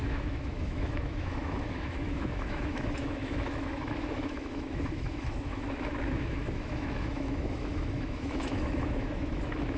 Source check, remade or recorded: remade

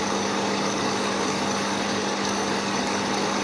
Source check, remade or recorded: remade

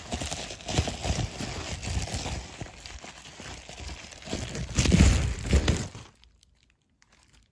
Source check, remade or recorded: recorded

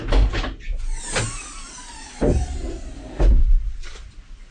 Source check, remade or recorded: recorded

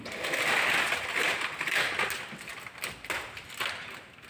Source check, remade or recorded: recorded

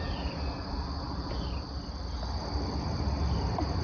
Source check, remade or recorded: recorded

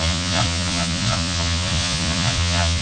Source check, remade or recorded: remade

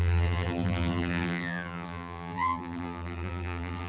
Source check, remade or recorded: remade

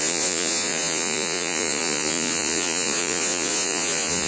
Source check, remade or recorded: remade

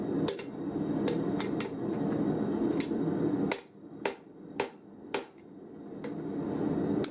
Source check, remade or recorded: recorded